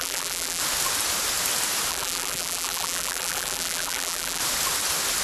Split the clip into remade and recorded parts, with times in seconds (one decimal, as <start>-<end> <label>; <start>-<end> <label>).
0.0-0.6 remade; 0.6-1.9 recorded; 1.9-4.4 remade; 4.4-5.2 recorded